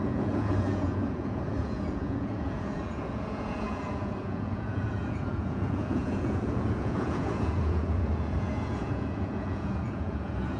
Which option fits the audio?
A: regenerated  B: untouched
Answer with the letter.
A